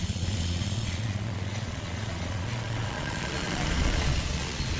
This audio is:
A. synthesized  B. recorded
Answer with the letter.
A